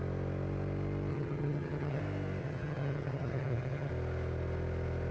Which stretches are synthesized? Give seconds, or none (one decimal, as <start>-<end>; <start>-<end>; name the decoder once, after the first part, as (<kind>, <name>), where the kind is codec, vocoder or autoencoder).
1.1-2.0 (vocoder, HiFi-GAN); 2.4-3.9

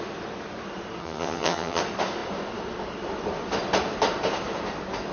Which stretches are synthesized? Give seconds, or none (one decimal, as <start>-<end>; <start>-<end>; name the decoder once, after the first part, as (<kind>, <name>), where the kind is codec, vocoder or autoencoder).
1.0-1.8 (vocoder, HiFi-GAN)

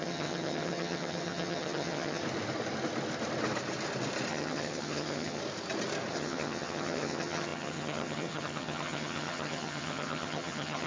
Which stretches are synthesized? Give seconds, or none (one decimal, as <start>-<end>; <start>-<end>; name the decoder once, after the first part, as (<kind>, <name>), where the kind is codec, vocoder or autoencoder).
0.0-2.2 (vocoder, HiFi-GAN); 4.3-5.4; 6.1-10.9

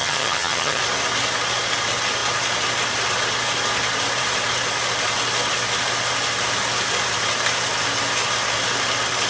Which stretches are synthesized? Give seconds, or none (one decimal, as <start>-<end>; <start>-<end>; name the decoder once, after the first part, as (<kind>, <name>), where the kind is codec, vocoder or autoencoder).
0.0-0.8 (vocoder, HiFi-GAN)

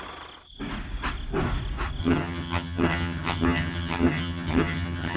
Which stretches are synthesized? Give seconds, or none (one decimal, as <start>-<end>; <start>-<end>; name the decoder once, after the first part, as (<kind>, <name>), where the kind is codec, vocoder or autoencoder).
2.0-5.2 (vocoder, HiFi-GAN)